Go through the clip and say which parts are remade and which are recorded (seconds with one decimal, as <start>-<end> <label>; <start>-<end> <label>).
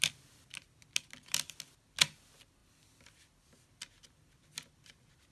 0.0-5.3 recorded